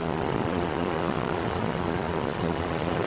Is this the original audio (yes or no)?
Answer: no